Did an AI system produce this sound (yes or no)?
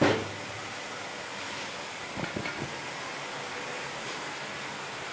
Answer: no